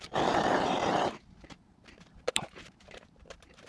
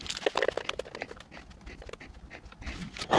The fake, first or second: first